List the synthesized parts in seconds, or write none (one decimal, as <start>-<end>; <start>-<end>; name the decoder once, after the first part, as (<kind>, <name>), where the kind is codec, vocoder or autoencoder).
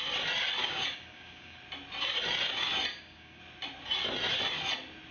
0.6-1.6 (codec, DAC); 2.9-3.4